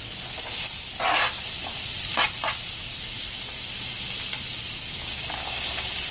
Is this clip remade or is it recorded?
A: recorded